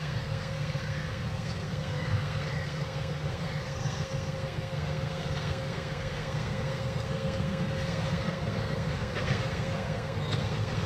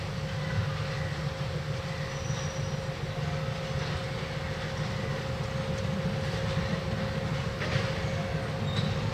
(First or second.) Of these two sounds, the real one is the second